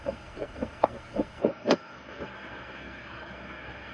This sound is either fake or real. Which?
fake